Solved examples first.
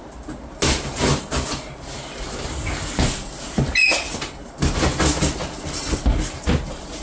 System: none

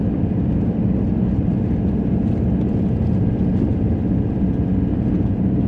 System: none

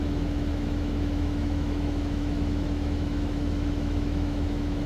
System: autoencoder, DAC-VAE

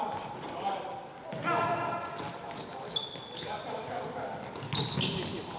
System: none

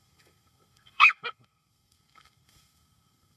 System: codec, SNAC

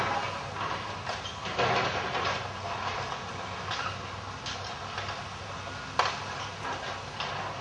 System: none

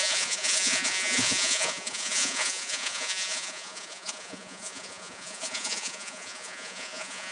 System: vocoder, Vocos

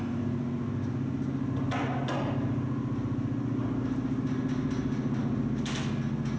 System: none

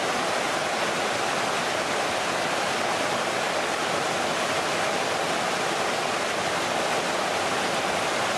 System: none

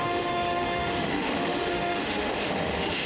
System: autoencoder, DAC-VAE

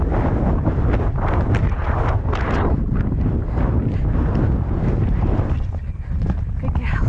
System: none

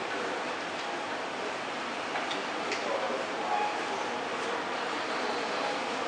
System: vocoder, BigVGAN v2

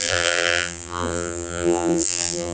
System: vocoder, BigVGAN v2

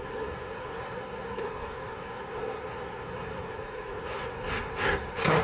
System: codec, SNAC